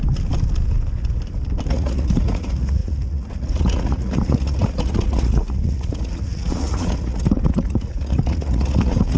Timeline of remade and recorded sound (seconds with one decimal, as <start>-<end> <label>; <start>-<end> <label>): 0.0-1.7 recorded; 1.7-9.2 remade